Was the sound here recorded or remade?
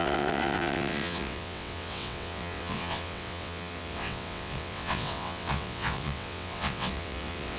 remade